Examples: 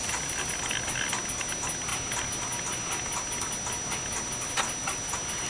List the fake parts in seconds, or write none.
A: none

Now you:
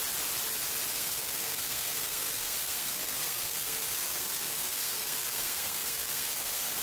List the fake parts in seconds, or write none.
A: 0.9-6.8 (codec, SNAC)

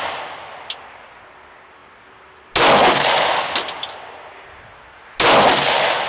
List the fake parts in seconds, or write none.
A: none

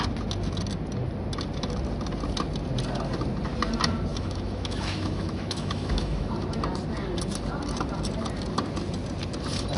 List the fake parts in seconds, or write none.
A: 4.1-6.3 (autoencoder, DAC-VAE)

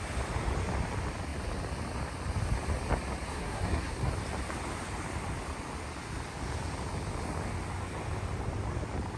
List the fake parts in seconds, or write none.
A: 3.3-4.1 (codec, SNAC)

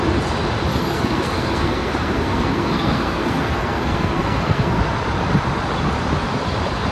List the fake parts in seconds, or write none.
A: 0.7-4.8 (codec, SNAC)

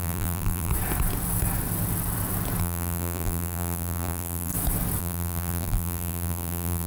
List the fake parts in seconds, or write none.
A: 0.0-0.7 (vocoder, BigVGAN v2); 2.6-4.5; 5.0-6.9

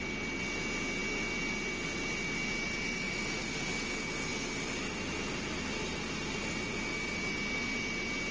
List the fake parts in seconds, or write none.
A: none